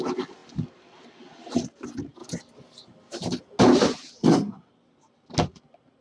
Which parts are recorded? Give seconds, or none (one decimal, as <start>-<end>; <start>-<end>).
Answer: 0.0-4.2; 4.7-6.0